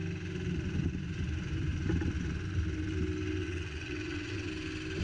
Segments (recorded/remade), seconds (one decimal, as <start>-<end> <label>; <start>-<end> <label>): 0.0-3.4 recorded; 3.4-4.5 remade; 4.5-5.0 recorded